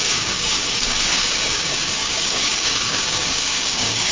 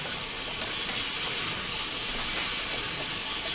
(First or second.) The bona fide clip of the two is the second